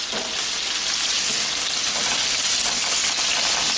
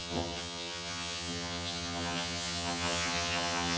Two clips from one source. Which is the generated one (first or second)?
second